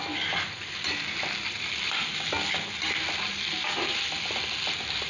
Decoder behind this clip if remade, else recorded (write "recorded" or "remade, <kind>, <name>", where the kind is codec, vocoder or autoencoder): recorded